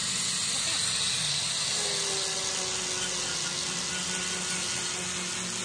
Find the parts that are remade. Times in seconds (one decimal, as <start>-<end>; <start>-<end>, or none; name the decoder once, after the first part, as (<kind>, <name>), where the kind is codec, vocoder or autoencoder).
none